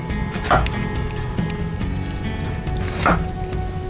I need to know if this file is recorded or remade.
recorded